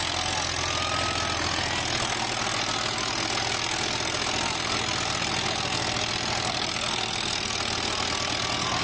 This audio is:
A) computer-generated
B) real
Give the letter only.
B